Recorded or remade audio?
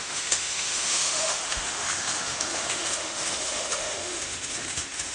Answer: remade